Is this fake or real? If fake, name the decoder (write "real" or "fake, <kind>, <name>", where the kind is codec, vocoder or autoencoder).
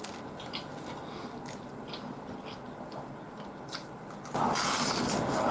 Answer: real